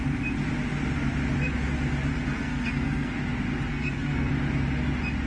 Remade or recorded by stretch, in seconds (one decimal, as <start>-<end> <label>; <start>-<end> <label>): 0.0-2.1 recorded; 2.1-3.1 remade; 3.1-3.7 recorded; 3.7-4.3 remade; 4.3-5.3 recorded